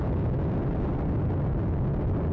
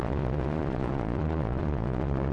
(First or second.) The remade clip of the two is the second